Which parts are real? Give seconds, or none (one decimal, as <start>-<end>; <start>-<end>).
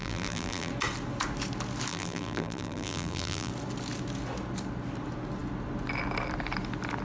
0.7-1.9; 3.5-7.0